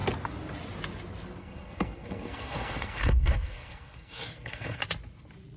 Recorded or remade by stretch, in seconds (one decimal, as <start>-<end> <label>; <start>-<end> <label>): 0.0-1.4 recorded; 1.4-4.8 remade; 4.8-5.6 recorded